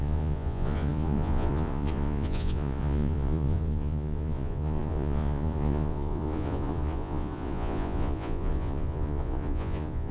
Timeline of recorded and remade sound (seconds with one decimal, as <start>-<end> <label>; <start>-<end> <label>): 0.0-10.1 remade